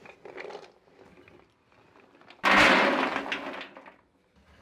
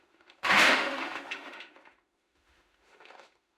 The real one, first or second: first